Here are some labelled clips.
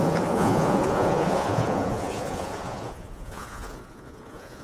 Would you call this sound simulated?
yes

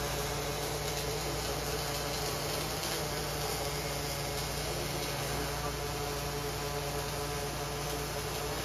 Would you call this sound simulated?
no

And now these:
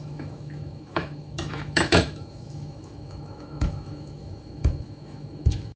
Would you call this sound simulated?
yes